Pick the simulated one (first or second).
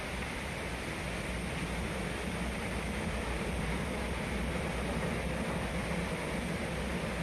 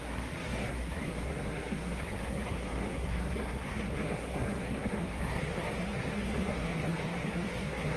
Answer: second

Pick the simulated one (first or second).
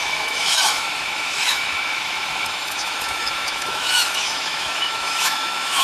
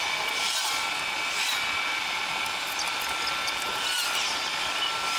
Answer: first